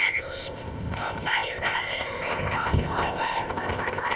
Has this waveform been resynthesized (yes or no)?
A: yes